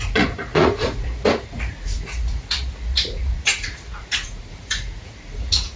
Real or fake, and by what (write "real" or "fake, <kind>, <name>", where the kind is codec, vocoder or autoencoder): fake, vocoder, Vocos